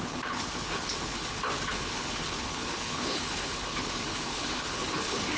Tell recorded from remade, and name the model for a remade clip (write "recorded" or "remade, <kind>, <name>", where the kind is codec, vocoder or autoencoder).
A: remade, codec, HILCodec